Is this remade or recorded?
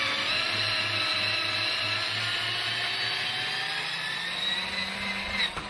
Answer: recorded